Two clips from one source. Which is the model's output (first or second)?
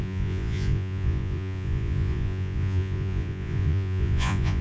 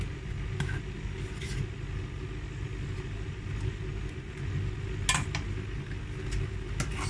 first